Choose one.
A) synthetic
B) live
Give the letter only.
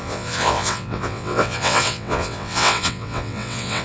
A